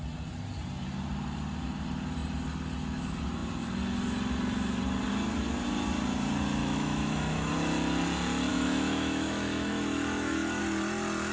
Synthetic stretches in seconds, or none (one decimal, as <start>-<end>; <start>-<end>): 6.6-7.5; 8.5-10.6